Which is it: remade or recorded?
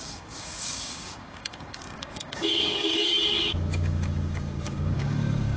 remade